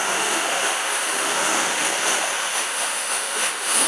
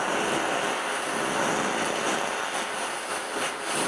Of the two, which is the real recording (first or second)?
second